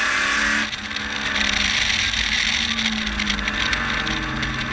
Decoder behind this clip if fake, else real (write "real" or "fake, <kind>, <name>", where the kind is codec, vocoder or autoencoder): real